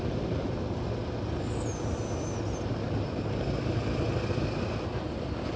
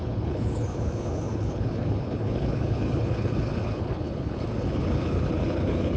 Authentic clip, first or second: first